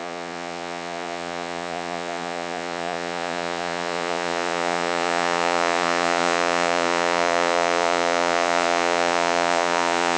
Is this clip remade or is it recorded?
remade